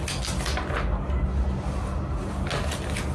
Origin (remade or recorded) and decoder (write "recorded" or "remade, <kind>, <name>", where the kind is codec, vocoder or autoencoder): recorded